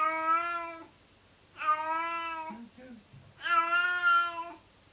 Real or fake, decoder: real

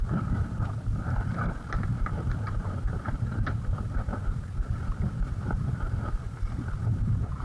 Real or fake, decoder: fake, vocoder, BigVGAN v2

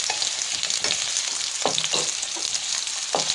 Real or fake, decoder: real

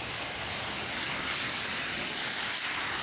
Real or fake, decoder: fake, codec, DAC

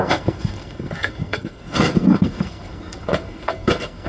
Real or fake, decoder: fake, codec, SNAC